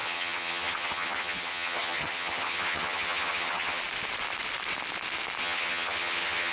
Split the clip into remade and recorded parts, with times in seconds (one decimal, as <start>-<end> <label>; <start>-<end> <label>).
0.0-3.8 remade; 3.8-5.4 recorded; 5.4-6.5 remade